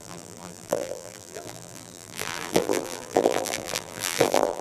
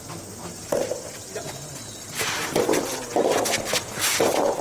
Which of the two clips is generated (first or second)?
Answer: first